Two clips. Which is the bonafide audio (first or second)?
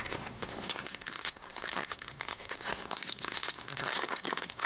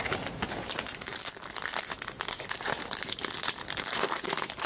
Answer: second